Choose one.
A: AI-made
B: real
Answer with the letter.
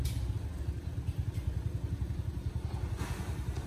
B